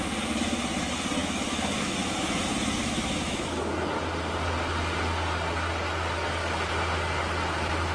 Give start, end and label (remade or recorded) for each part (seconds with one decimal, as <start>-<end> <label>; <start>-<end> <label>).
0.0-1.2 recorded; 1.2-2.4 remade; 2.4-2.8 recorded; 2.8-3.6 remade; 3.6-7.9 recorded